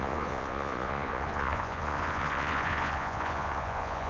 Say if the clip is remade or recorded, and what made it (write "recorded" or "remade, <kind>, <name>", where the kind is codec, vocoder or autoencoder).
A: remade, vocoder, Vocos